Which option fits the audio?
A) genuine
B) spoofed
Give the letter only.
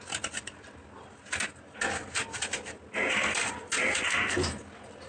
A